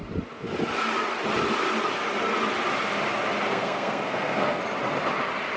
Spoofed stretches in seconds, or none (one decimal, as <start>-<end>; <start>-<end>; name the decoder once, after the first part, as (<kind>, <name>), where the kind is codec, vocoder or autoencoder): 3.5-4.6 (codec, SNAC)